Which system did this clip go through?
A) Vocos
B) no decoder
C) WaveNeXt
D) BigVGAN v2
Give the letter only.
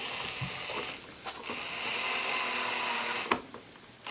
B